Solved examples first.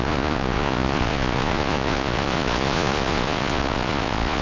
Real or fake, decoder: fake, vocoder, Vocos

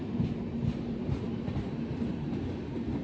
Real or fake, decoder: real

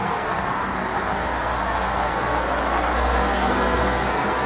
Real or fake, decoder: fake, codec, SNAC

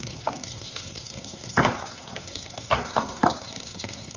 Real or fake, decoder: fake, codec, SNAC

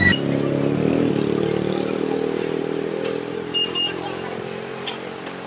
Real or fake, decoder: real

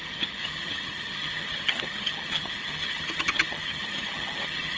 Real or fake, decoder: fake, vocoder, HiFi-GAN